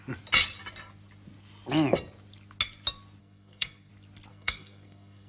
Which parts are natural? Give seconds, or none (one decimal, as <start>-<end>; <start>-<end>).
0.0-3.2; 3.9-4.3